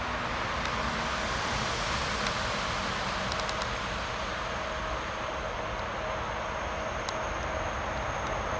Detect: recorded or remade recorded